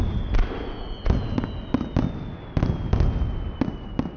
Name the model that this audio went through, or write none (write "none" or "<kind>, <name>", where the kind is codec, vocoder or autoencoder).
none